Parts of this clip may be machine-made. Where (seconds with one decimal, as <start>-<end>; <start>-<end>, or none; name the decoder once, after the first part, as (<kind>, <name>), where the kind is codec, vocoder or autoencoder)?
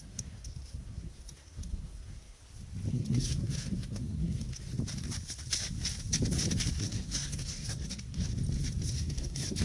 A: 0.0-2.4 (codec, SNAC); 2.9-4.7; 6.8-8.3; 8.9-9.6